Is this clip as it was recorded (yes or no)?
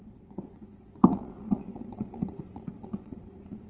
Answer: no